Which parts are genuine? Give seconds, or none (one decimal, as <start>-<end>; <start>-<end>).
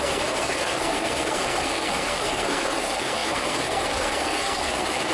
none